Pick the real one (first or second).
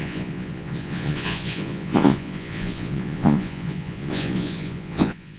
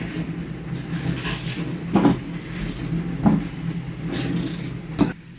second